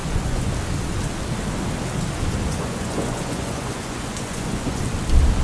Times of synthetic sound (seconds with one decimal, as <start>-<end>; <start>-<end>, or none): 0.0-0.5; 2.5-4.8